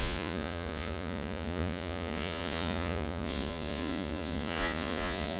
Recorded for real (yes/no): no